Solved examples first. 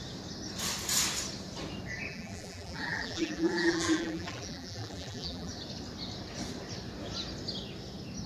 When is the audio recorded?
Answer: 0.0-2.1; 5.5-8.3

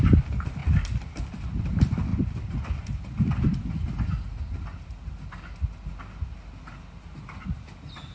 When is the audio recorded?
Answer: 0.6-1.6; 2.1-7.0

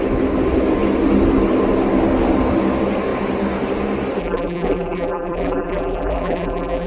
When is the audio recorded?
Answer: 0.0-4.2

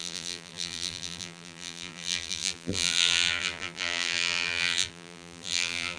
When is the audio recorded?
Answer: none